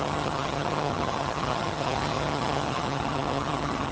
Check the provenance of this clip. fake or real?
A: fake